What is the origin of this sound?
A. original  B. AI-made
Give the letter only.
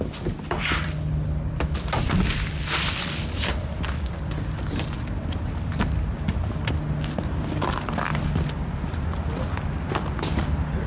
A